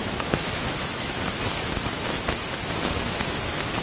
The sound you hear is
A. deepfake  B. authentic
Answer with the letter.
A